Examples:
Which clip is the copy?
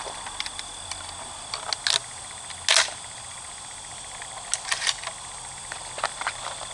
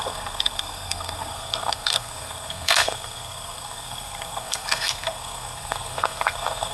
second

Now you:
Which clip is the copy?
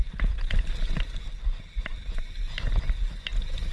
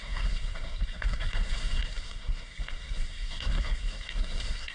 second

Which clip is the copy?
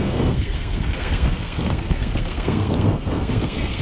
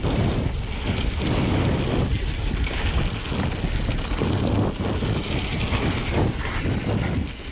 first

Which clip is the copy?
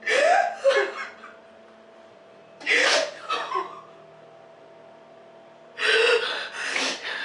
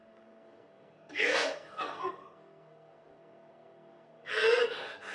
second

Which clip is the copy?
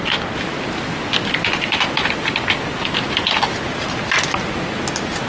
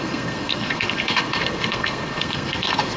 second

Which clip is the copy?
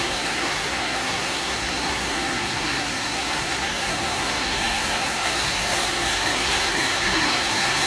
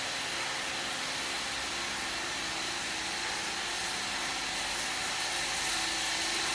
first